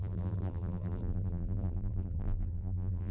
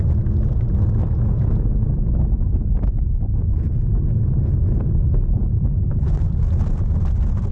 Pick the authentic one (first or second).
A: second